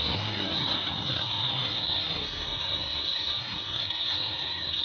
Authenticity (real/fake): fake